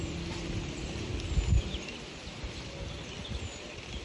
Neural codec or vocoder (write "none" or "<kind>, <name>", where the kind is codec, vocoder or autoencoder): none